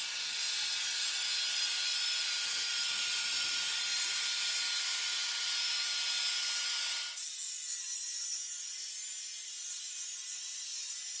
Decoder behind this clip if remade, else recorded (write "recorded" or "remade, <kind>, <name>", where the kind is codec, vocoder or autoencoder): recorded